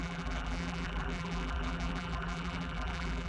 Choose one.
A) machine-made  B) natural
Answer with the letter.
A